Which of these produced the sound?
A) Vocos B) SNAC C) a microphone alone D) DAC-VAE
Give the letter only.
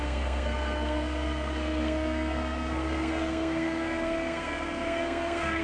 B